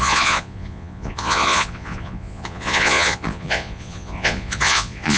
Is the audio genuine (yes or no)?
no